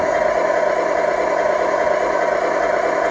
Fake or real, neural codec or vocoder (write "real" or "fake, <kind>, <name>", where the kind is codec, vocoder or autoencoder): real